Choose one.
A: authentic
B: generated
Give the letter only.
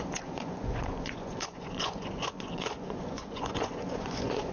B